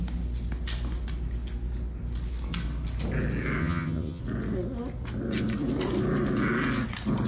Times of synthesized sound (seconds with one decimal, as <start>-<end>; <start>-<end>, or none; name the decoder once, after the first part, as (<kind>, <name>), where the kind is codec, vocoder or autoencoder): 3.6-4.2 (vocoder, HiFi-GAN)